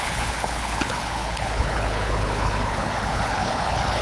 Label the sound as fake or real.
fake